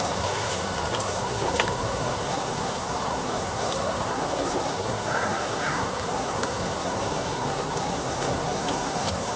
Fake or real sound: fake